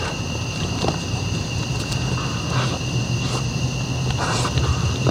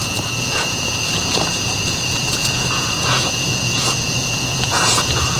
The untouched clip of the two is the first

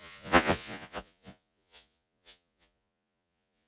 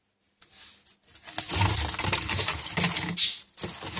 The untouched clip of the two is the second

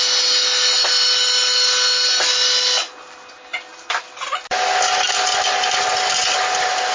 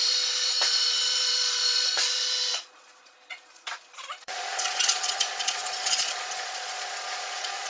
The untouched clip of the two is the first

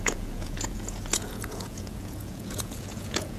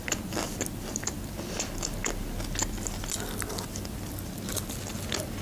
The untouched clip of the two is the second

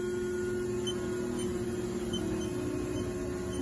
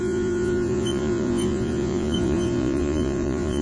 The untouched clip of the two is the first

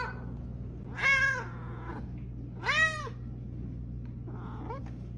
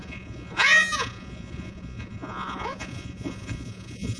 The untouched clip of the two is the first